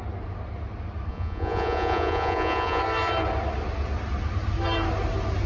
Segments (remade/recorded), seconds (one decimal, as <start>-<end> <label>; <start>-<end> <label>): 0.0-1.1 recorded; 1.1-2.8 remade; 2.8-5.5 recorded